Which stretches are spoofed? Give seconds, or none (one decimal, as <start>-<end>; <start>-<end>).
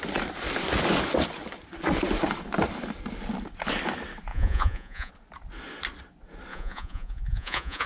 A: 4.3-5.1; 6.5-7.9